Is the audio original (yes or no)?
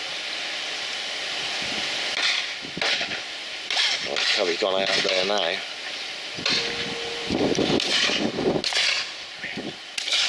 yes